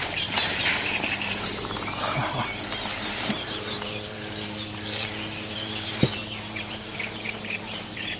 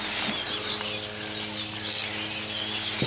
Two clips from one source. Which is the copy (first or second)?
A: first